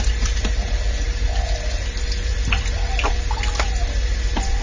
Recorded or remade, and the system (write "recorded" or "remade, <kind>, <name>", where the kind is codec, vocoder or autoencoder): recorded